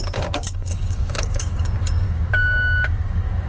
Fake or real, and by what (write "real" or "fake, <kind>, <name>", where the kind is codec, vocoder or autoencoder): fake, codec, DAC